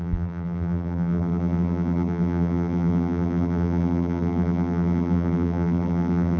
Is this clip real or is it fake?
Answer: fake